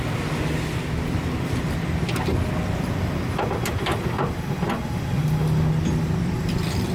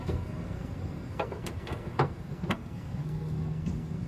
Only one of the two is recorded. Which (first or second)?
first